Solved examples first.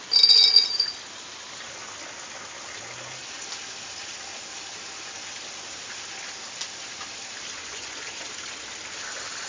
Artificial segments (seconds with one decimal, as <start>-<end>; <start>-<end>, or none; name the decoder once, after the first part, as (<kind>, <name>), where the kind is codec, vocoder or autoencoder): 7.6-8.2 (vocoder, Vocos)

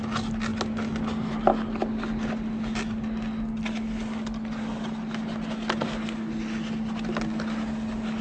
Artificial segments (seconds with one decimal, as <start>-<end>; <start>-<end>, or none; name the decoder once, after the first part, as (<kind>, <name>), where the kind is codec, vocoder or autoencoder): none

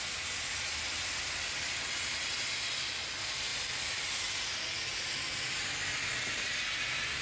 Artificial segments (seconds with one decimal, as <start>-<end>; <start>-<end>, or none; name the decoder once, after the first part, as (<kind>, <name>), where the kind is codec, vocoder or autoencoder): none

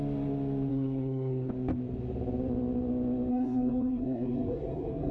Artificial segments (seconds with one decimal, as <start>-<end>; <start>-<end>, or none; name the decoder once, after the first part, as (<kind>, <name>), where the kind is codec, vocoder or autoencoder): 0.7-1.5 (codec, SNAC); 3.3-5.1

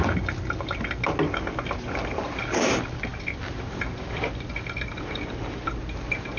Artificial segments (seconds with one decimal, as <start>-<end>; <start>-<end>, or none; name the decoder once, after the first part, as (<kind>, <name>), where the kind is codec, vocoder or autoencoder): 3.1-5.8 (vocoder, BigVGAN v2)

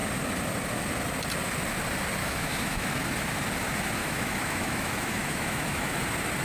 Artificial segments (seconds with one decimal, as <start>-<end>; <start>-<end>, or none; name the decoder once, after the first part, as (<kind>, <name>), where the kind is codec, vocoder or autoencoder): 2.2-2.9 (autoencoder, DAC-VAE); 4.0-6.0

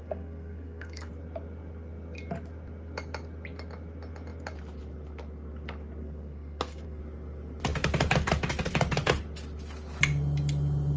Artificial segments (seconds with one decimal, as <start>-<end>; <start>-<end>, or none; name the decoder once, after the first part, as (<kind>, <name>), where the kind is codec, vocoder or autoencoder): 0.0-1.1 (codec, SNAC); 6.0-7.0

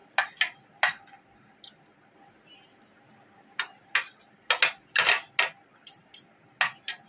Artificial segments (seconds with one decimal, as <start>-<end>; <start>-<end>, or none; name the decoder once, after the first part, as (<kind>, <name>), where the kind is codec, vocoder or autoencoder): none